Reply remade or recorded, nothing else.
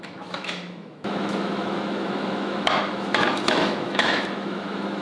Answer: remade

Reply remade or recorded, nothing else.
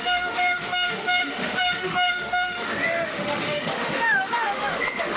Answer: remade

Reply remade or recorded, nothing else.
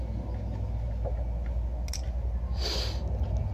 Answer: recorded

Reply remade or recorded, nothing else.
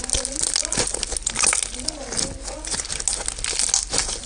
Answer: recorded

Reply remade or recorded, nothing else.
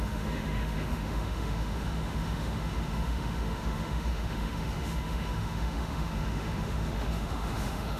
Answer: remade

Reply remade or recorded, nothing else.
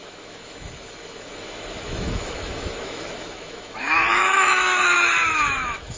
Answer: remade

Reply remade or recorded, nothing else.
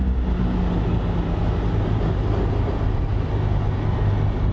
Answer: recorded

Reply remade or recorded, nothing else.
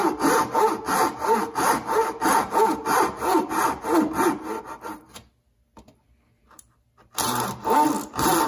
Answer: recorded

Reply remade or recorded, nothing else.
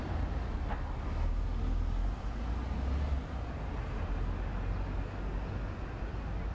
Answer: recorded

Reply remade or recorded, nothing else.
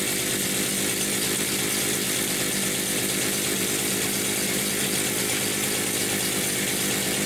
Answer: recorded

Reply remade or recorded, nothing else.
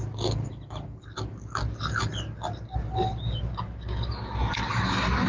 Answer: recorded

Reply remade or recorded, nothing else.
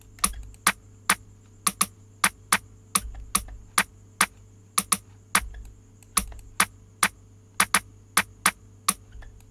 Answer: recorded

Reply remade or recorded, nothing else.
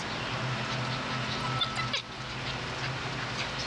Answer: recorded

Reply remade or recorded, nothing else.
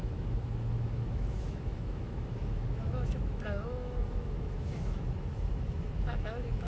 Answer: remade